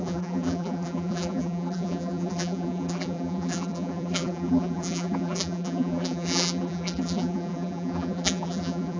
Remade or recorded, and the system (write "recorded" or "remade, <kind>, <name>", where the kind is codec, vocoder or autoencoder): remade, vocoder, BigVGAN v2